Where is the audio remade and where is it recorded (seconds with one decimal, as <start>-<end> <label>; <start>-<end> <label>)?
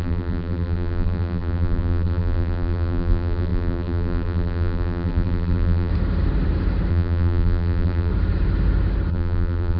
0.0-5.9 remade; 5.9-6.9 recorded; 6.9-8.1 remade; 8.1-9.1 recorded; 9.1-9.8 remade